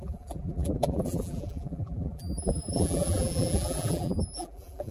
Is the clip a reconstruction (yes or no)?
yes